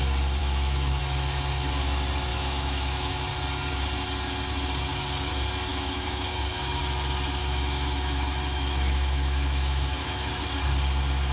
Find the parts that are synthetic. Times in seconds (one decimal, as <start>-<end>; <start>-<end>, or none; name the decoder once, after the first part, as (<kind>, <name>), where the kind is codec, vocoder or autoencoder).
0.4-1.0 (autoencoder, DAC-VAE); 2.3-3.1; 5.7-6.8; 7.4-10.3